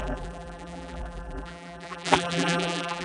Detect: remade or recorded remade